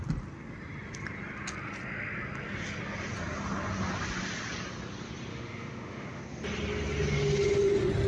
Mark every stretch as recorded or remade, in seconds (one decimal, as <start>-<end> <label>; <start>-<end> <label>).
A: 0.0-5.3 recorded; 5.3-6.2 remade; 6.2-8.1 recorded